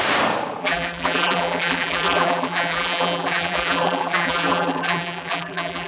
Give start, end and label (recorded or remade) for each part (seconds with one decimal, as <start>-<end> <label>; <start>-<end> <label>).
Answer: 0.0-0.6 recorded; 0.6-5.9 remade